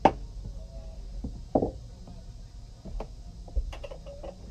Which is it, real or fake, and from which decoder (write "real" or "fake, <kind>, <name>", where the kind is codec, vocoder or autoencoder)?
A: real